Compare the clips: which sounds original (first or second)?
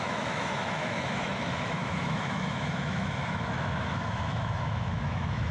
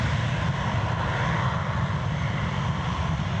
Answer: second